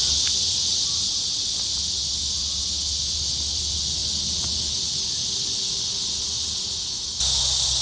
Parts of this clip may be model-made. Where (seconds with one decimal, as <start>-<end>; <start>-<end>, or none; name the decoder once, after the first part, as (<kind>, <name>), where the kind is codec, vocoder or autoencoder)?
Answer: none